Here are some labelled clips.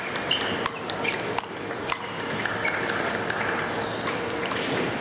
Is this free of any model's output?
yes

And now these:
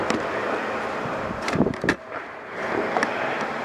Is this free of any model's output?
no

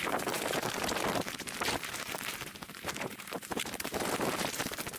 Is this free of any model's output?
no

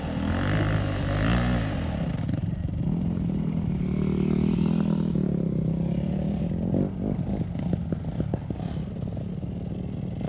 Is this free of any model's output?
yes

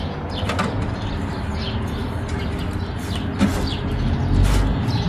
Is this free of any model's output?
yes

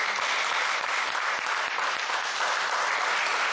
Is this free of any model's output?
yes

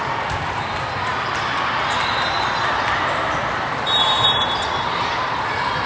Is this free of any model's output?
no